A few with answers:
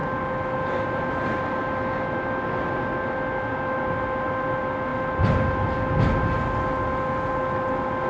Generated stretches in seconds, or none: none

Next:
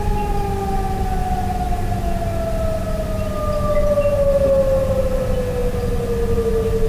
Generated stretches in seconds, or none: none

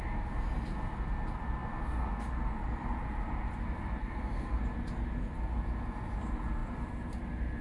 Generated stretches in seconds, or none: 4.0-4.6 (codec, SNAC)

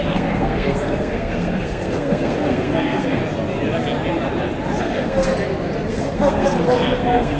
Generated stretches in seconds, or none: 0.0-3.2 (codec, SNAC); 4.8-5.3; 5.9-7.4